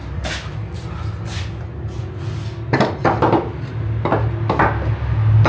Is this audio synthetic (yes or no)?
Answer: no